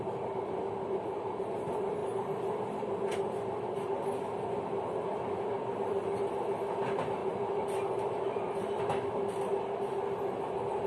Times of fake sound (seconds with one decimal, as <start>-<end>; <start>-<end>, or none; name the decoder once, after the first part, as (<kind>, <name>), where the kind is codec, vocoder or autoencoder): 7.2-8.8 (vocoder, BigVGAN v2)